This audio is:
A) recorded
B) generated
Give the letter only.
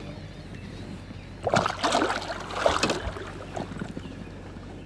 A